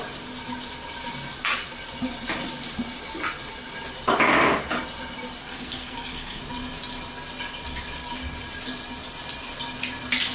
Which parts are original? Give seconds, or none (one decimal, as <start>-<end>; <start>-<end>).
0.0-5.4; 6.4-10.3